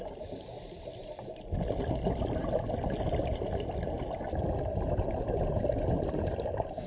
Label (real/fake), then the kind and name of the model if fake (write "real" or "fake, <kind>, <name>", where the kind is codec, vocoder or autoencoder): real